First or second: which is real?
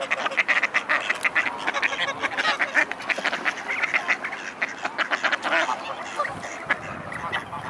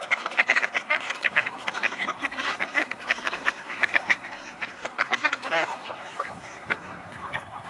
first